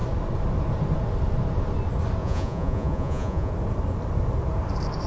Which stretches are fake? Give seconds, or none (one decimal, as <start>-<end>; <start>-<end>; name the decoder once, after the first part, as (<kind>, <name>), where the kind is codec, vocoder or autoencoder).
2.2-3.5 (vocoder, Vocos)